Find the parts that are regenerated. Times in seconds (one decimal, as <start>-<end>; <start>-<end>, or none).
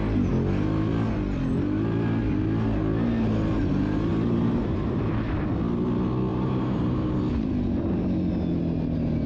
4.1-5.5; 6.3-7.2